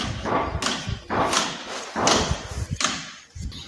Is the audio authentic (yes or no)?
yes